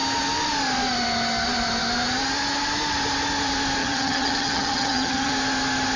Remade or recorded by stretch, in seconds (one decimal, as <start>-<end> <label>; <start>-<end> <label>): 0.0-3.8 recorded; 3.8-5.3 remade; 5.3-6.0 recorded